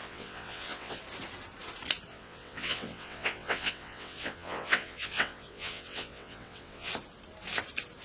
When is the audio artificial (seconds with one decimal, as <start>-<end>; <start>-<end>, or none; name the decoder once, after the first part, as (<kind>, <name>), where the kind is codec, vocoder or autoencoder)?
0.0-1.0 (vocoder, WaveNeXt); 2.1-6.9